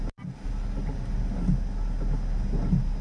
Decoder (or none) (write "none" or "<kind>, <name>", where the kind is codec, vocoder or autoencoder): none